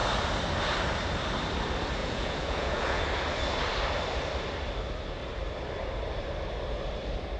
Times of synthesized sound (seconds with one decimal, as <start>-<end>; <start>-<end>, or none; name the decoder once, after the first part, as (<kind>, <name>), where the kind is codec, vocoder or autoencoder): 2.0-3.0 (vocoder, Vocos)